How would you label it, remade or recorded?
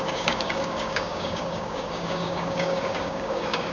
remade